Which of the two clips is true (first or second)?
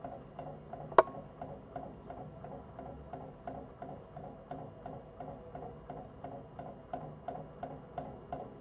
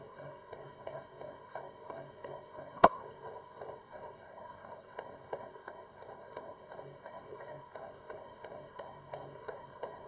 first